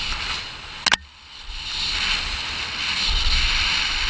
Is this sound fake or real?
real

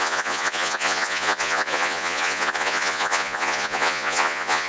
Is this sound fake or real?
fake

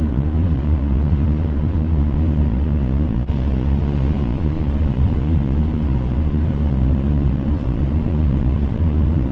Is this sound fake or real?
fake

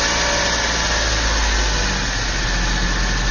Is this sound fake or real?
real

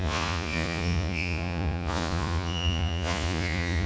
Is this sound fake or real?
fake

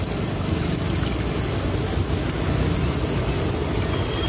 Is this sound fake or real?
real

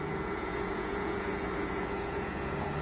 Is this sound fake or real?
fake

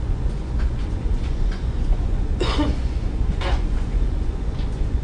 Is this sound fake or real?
fake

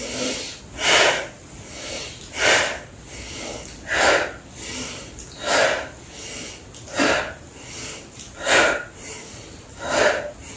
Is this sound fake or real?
real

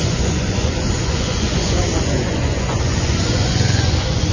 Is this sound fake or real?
fake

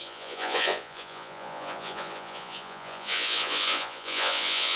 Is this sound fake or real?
fake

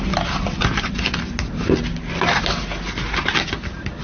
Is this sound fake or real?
real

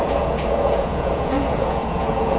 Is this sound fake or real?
fake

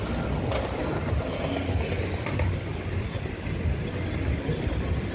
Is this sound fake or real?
real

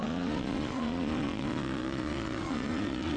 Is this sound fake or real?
fake